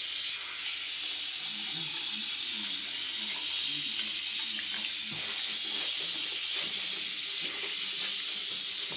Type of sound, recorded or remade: recorded